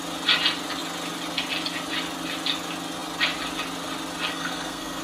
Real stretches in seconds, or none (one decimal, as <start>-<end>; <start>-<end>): 0.0-4.3